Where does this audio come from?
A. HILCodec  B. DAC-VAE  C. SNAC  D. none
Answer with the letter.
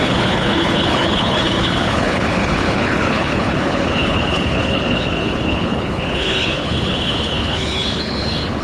A